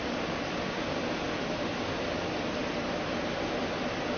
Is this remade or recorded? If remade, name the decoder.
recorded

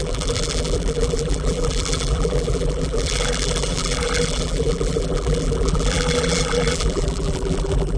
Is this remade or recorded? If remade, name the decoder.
remade, vocoder, BigVGAN v2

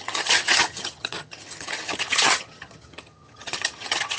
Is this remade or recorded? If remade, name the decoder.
remade, vocoder, HiFi-GAN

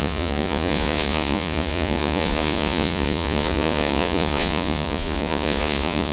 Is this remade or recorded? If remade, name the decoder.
remade, vocoder, Vocos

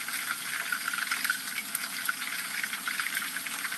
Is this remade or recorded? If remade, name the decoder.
recorded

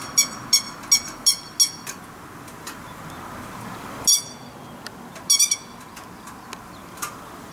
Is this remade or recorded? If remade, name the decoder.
recorded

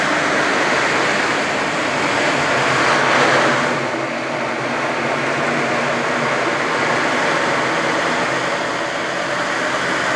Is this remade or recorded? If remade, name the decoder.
recorded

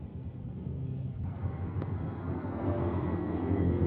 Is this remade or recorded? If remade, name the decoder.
remade, codec, SNAC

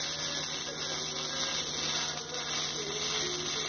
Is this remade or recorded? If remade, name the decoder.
recorded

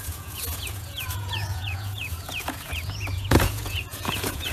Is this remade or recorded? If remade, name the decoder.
remade, vocoder, Vocos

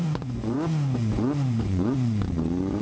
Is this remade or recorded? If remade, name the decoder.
remade, vocoder, Vocos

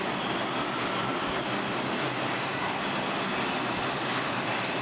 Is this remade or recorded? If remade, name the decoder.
recorded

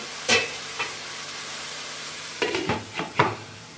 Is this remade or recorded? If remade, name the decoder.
remade, vocoder, BigVGAN v2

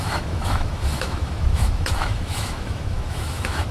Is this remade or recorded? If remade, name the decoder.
remade, autoencoder, DAC-VAE